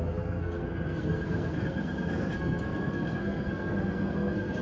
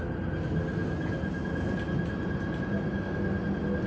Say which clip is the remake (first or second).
first